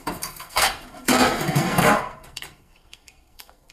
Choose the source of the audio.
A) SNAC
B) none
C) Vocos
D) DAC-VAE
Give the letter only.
A